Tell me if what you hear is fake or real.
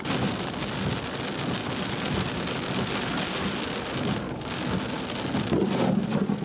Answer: real